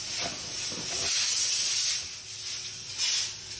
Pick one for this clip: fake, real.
real